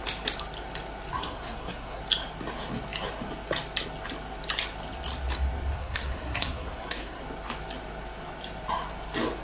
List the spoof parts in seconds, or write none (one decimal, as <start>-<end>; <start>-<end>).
1.2-2.0; 5.8-7.2